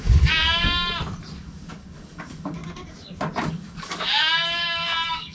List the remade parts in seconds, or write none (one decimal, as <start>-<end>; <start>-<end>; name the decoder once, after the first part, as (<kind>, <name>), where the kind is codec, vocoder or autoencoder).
0.0-0.9 (codec, DAC); 1.4-2.6; 3.5-5.3